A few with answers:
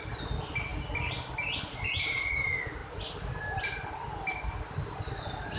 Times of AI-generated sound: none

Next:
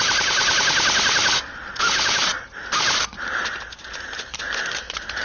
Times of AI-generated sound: 0.0-0.4 (vocoder, BigVGAN v2); 1.5-5.2

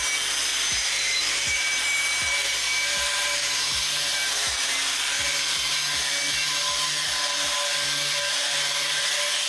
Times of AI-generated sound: 0.5-4.8 (vocoder, BigVGAN v2)

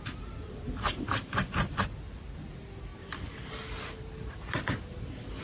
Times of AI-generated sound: none

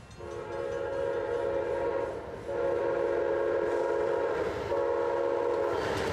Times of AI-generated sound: none

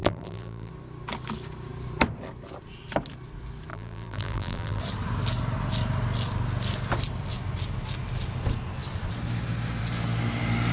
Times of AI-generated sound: 0.0-0.7 (vocoder, BigVGAN v2); 3.7-4.8

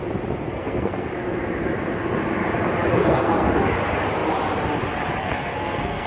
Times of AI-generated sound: 0.5-1.1 (codec, SNAC); 2.9-3.5; 5.2-6.1